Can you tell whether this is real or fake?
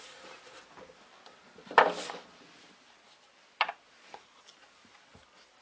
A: real